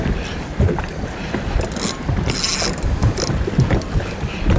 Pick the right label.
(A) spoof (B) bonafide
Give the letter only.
B